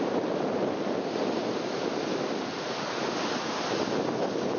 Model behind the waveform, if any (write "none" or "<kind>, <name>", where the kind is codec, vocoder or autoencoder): none